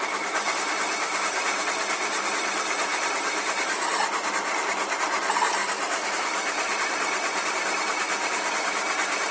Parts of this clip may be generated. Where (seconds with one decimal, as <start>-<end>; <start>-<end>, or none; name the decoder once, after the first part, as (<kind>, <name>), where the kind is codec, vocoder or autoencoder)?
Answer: 5.6-7.5 (vocoder, BigVGAN v2)